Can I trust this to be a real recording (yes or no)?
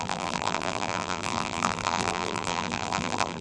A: no